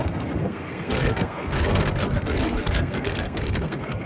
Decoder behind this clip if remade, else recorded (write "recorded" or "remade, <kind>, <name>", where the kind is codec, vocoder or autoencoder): remade, codec, SNAC